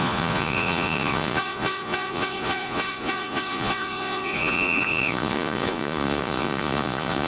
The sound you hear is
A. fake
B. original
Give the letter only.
A